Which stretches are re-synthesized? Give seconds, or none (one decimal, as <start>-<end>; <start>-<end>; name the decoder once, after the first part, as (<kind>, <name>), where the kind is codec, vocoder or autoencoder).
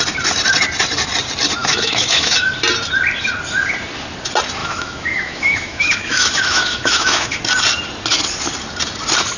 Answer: 1.6-2.5 (autoencoder, DAC-VAE); 4.6-7.4